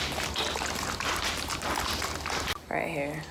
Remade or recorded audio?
recorded